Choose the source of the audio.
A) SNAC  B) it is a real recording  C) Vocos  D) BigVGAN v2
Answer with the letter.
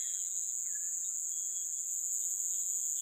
D